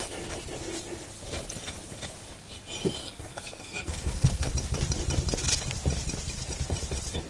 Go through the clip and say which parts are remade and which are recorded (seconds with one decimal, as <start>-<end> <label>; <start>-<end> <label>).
0.0-3.0 recorded; 3.0-4.5 remade; 4.5-7.3 recorded